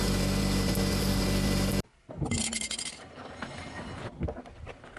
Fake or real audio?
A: real